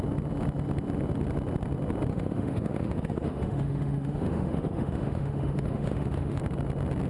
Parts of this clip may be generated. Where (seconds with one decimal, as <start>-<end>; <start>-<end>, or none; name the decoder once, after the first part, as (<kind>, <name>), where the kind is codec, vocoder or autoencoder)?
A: 2.1-6.4 (autoencoder, DAC-VAE)